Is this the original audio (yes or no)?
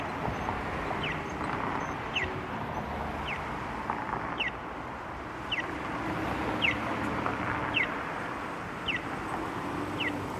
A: yes